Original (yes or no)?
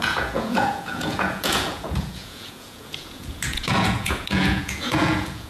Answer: no